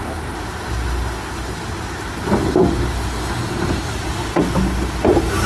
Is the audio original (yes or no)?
yes